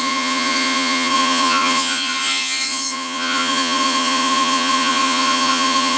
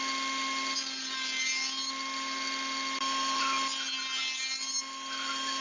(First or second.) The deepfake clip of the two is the first